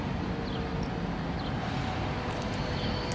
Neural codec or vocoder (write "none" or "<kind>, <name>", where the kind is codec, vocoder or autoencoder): none